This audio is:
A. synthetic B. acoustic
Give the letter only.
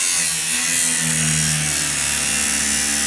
B